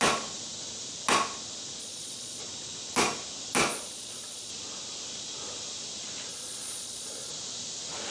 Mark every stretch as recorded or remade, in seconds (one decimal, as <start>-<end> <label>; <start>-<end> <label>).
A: 0.0-1.8 recorded; 1.8-2.4 remade; 2.4-3.7 recorded; 3.7-4.5 remade; 4.5-6.3 recorded; 6.3-7.3 remade; 7.3-8.1 recorded